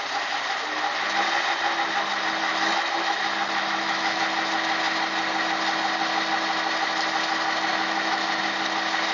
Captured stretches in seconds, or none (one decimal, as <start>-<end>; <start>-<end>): 0.0-2.5; 4.2-7.7; 8.4-9.1